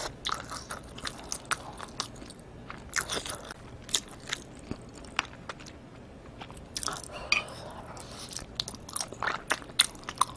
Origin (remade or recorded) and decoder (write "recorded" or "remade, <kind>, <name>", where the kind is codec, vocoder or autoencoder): recorded